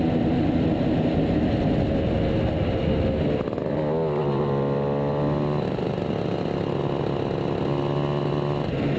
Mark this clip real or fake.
real